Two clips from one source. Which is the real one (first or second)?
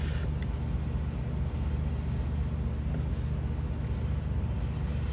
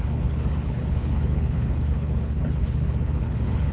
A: first